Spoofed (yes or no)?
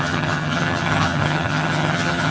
yes